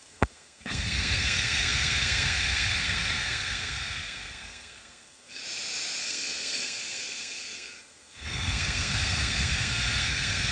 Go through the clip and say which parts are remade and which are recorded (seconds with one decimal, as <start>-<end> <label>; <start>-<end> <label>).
0.0-5.4 remade; 5.4-6.0 recorded; 6.0-10.5 remade